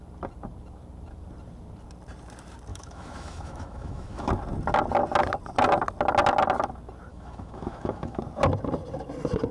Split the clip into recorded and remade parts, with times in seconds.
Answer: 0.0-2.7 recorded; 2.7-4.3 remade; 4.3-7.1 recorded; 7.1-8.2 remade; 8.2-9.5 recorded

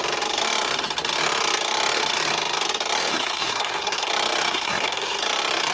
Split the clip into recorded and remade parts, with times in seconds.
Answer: 0.0-3.1 recorded; 3.1-4.1 remade; 4.1-4.5 recorded; 4.5-5.2 remade; 5.2-5.7 recorded

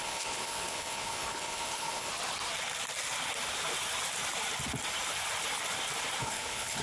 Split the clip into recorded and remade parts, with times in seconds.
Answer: 0.0-2.1 remade; 2.1-6.2 recorded; 6.2-6.8 remade